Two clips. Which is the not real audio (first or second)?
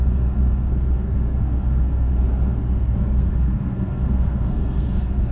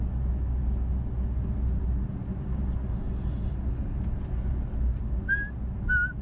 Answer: first